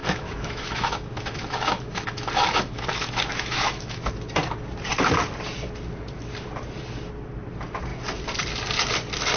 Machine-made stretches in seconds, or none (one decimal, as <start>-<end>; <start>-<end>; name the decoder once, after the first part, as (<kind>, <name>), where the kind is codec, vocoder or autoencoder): 0.0-4.1 (autoencoder, DAC-VAE)